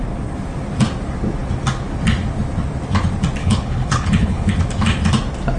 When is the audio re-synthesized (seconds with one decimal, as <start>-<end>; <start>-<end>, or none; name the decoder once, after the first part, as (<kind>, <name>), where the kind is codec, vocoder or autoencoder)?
3.4-4.5 (codec, HILCodec)